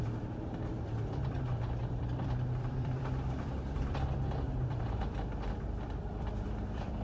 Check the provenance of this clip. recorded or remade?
remade